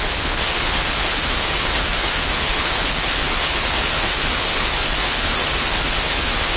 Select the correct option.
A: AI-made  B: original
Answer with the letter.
A